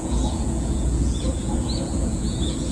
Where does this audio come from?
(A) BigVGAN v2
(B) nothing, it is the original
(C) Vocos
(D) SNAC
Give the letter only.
C